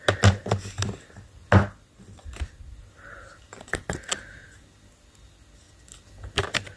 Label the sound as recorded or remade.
recorded